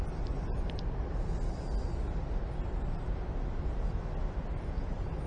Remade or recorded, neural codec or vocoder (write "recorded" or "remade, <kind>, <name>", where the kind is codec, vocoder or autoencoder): recorded